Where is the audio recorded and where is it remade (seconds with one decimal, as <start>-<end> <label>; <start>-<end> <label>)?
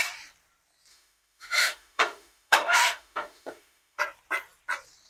0.0-0.9 recorded; 0.9-4.0 remade; 4.0-5.1 recorded